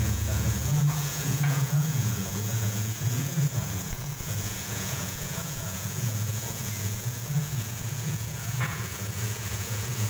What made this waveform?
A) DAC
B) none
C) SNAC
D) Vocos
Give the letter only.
D